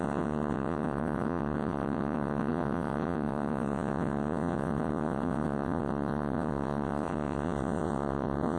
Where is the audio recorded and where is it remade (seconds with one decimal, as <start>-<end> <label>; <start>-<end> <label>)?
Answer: 0.0-8.6 remade